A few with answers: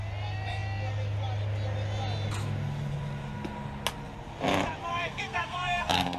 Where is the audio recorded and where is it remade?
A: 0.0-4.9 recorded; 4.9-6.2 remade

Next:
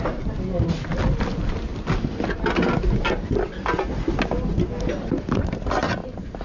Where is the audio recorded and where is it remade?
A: 0.0-6.4 recorded

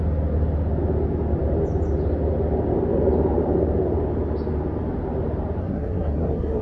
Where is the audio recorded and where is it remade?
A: 0.0-5.6 recorded; 5.6-6.6 remade

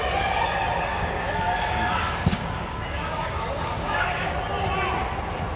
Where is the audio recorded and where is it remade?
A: 0.0-0.9 recorded; 0.9-4.3 remade; 4.3-5.6 recorded

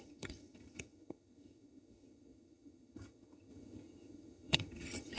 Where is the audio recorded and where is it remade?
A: 0.0-5.2 remade

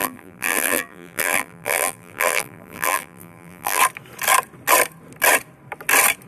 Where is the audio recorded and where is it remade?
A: 0.0-3.8 remade; 3.8-6.3 recorded

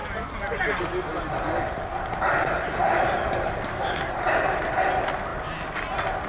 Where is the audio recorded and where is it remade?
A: 0.0-0.6 remade; 0.6-2.8 recorded; 2.8-4.6 remade; 4.6-6.3 recorded

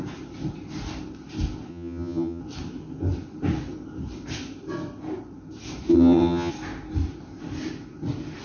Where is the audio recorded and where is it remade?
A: 0.0-1.7 recorded; 1.7-2.4 remade; 2.4-5.9 recorded; 5.9-6.5 remade; 6.5-8.4 recorded